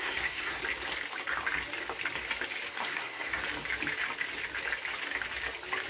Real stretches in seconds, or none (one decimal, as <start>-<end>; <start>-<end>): 0.6-2.7; 3.4-5.9